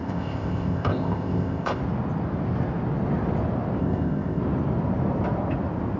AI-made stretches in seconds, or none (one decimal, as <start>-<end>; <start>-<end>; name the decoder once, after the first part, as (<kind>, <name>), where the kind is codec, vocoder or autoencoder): 0.0-1.8 (codec, ZipCodec); 3.8-4.4